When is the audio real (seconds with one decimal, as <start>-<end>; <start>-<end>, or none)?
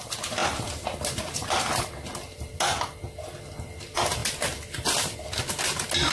0.0-6.1